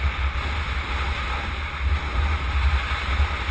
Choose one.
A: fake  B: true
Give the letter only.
B